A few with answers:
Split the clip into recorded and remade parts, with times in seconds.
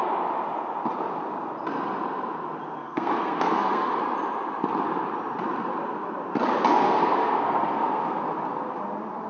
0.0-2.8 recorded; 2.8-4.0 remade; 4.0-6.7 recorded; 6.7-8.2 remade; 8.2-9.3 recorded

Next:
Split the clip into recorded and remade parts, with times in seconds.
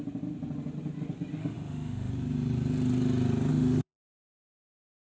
0.0-1.4 recorded; 1.4-2.1 remade; 2.1-3.5 recorded; 3.5-4.2 remade; 4.2-5.1 recorded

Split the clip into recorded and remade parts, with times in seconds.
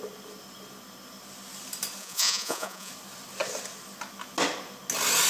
0.0-2.0 recorded; 2.0-2.9 remade; 2.9-5.3 recorded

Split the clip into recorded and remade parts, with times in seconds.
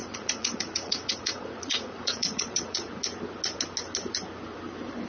0.0-2.9 remade; 2.9-5.1 recorded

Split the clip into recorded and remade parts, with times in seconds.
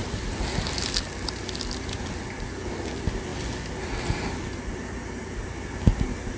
0.0-6.4 recorded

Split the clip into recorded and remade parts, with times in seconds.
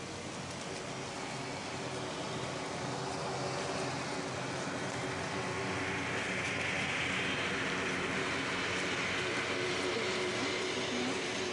0.0-10.3 recorded; 10.3-10.9 remade; 10.9-11.5 recorded